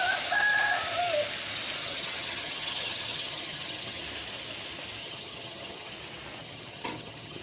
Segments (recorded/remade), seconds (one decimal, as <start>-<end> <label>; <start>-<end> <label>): 0.0-1.8 recorded; 1.8-4.0 remade; 4.0-5.0 recorded; 5.0-5.9 remade; 5.9-6.4 recorded; 6.4-7.4 remade